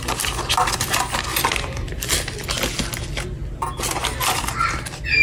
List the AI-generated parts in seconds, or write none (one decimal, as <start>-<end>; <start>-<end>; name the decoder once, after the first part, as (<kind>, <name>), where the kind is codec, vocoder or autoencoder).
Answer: 1.3-2.1 (vocoder, BigVGAN v2); 3.4-3.9